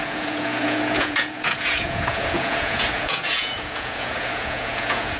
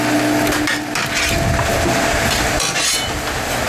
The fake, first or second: first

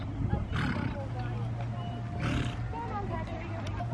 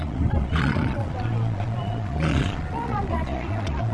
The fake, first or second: second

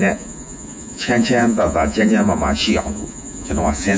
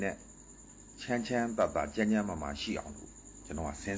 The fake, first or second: first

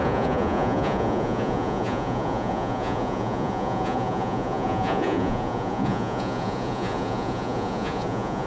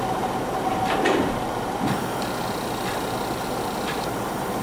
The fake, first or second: first